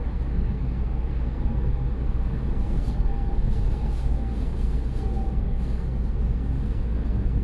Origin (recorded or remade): remade